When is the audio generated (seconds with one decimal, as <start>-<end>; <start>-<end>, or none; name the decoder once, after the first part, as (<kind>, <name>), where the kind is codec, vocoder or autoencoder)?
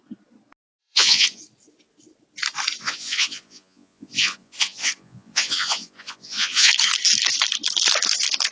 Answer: 0.8-1.4 (vocoder, Vocos); 2.8-6.7